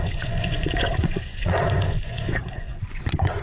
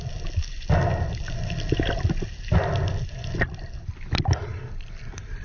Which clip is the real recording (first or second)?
second